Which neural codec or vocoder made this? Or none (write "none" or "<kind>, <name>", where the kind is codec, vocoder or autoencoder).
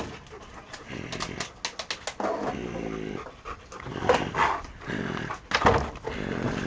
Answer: none